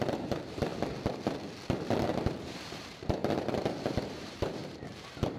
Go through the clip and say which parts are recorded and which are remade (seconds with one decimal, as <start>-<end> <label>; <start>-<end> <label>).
0.0-0.7 remade; 0.7-2.4 recorded; 2.4-3.2 remade; 3.2-4.1 recorded; 4.1-5.4 remade